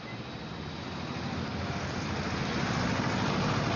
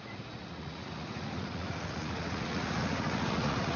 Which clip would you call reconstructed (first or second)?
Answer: second